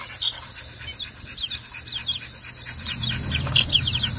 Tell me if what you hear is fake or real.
real